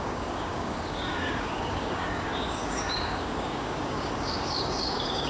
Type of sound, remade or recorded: remade